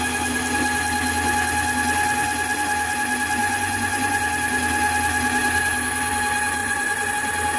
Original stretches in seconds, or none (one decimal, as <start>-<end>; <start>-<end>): 0.0-3.4; 4.2-6.6; 7.1-7.6